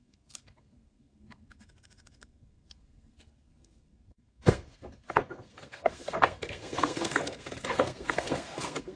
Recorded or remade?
remade